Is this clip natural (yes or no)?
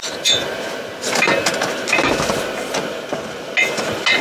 yes